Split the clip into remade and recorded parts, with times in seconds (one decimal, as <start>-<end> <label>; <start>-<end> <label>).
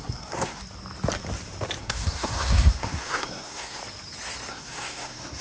0.0-0.6 remade; 0.6-1.8 recorded; 1.8-3.8 remade; 3.8-4.5 recorded; 4.5-5.4 remade